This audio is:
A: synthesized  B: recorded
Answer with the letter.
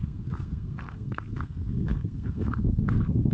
A